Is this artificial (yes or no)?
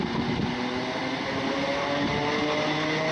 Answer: no